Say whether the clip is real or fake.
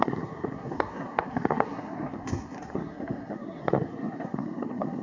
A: fake